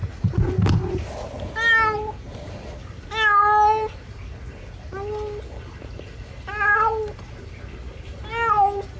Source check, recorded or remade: recorded